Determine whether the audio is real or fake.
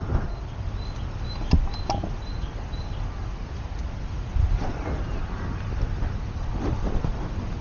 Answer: real